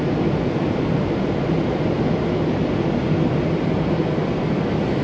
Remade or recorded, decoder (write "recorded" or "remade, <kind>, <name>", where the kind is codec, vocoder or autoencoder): recorded